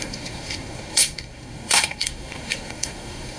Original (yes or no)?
no